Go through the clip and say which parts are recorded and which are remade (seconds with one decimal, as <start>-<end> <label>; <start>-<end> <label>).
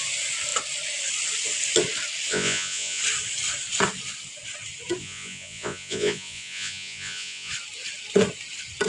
0.0-2.3 recorded; 2.3-3.0 remade; 3.0-5.0 recorded; 5.0-7.5 remade; 7.5-8.9 recorded